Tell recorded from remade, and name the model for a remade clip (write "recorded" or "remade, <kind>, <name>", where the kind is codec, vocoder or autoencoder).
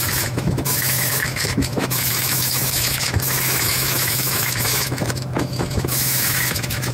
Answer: remade, autoencoder, DAC-VAE